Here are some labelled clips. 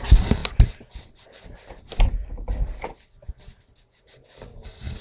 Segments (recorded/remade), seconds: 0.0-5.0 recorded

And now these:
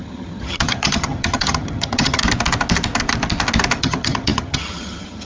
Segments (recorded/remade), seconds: 0.0-2.2 remade; 2.2-3.8 recorded; 3.8-5.2 remade

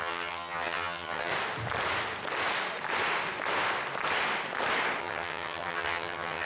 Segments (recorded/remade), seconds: 0.0-1.3 remade; 1.3-5.0 recorded; 5.0-6.5 remade

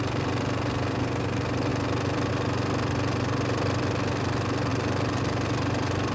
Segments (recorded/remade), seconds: 0.0-6.1 recorded